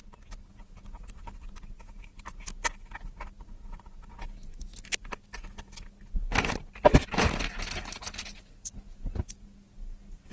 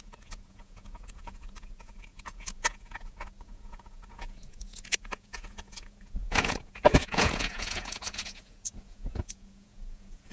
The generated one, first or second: second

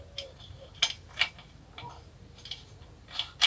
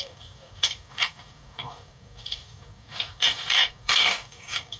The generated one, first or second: second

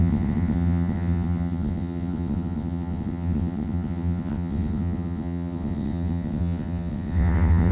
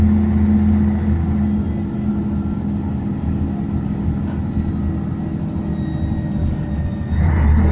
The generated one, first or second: first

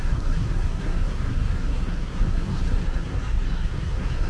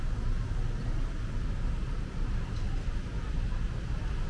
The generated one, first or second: first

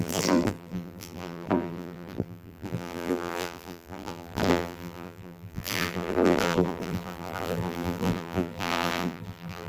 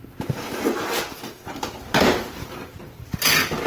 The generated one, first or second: first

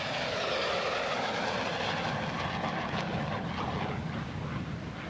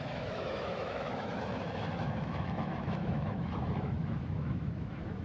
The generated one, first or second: second